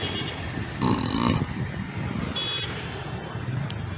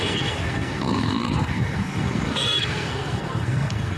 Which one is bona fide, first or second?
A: first